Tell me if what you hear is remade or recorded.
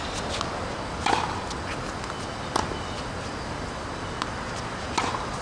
recorded